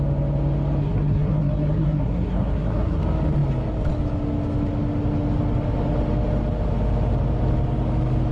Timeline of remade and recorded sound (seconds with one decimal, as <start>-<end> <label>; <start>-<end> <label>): 0.0-0.8 recorded; 0.8-3.0 remade; 3.0-8.3 recorded